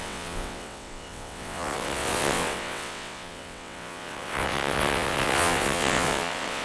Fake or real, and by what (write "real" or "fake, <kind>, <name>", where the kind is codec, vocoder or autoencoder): fake, vocoder, WaveNeXt